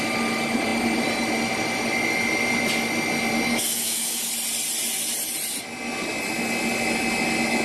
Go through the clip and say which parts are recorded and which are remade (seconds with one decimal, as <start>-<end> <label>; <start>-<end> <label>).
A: 0.0-3.5 recorded; 3.5-4.3 remade; 4.3-7.6 recorded

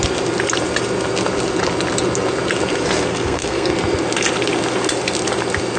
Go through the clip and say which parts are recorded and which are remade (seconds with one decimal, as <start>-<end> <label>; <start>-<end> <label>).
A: 0.0-3.1 recorded; 3.1-3.7 remade; 3.7-5.8 recorded